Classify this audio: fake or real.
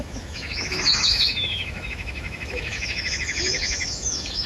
fake